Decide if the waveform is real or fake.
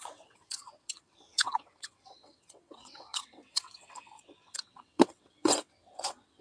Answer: fake